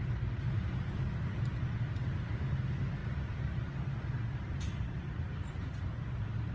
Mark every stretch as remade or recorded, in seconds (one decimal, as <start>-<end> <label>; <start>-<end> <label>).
0.0-6.5 recorded